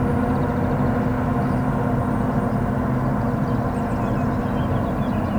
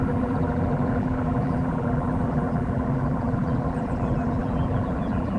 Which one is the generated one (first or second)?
second